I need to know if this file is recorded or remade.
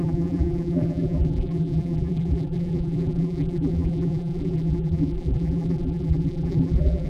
remade